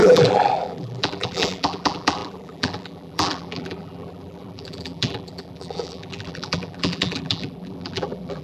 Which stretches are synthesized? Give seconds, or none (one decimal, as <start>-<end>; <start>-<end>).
0.0-8.4